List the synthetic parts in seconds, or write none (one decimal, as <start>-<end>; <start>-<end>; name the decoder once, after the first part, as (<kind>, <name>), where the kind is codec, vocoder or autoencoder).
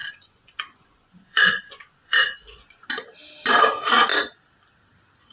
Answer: 0.0-2.9 (vocoder, Vocos)